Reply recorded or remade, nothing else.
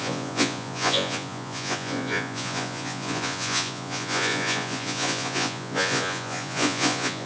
remade